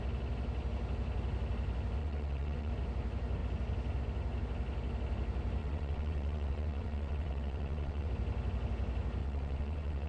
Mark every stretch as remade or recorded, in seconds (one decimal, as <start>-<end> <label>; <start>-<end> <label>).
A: 0.0-2.0 recorded; 2.0-2.7 remade; 2.7-5.6 recorded; 5.6-8.1 remade; 8.1-9.2 recorded; 9.2-10.1 remade